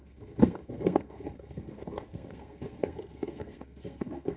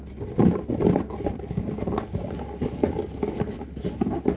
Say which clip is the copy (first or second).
first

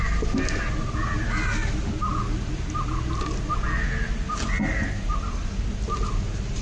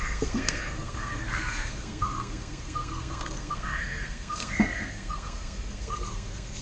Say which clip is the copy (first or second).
second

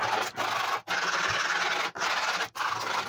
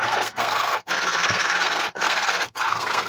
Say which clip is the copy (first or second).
second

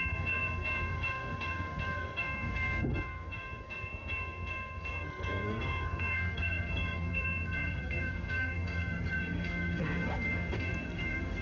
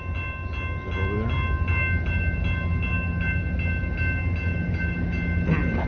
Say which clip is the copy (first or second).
first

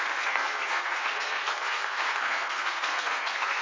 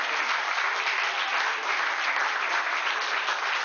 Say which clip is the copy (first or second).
first